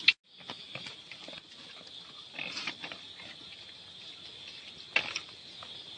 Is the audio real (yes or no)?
yes